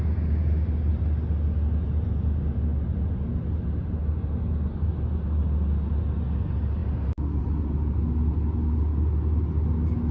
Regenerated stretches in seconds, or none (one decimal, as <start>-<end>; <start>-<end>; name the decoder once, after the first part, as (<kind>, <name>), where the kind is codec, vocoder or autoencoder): none